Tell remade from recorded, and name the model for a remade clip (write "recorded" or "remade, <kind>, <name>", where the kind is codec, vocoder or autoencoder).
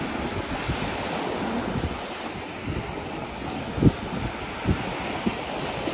recorded